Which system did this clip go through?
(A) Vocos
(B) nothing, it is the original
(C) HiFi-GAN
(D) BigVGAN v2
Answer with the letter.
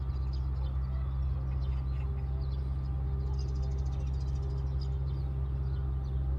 B